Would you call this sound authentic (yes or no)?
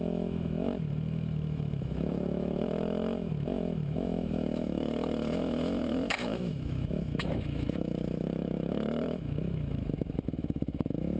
no